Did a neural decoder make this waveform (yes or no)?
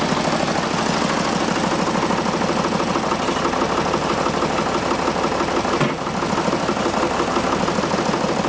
no